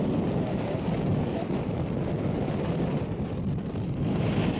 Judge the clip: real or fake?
real